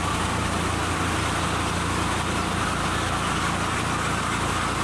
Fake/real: real